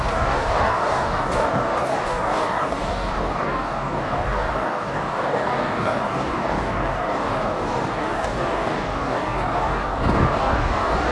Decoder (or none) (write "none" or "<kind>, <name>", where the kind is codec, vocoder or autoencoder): codec, DAC